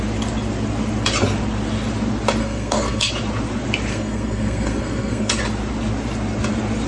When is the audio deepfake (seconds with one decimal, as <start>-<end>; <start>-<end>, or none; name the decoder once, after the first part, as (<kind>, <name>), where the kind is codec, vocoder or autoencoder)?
2.4-3.1 (codec, SNAC); 3.9-5.4